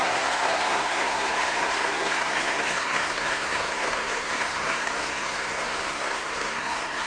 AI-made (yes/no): yes